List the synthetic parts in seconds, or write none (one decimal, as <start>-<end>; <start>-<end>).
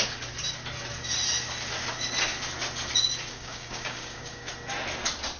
3.3-4.5